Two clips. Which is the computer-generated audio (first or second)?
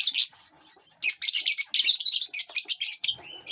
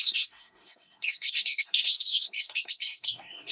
second